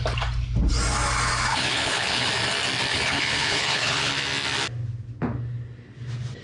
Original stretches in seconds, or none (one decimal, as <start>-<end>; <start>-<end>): 0.0-1.5; 2.3-2.9; 4.1-6.4